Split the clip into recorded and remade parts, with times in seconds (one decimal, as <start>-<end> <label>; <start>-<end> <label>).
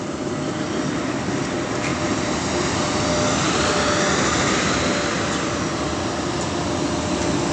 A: 0.0-7.5 recorded